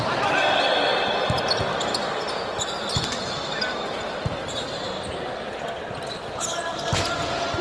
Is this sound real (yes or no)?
yes